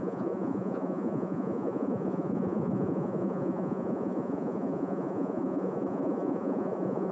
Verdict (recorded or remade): remade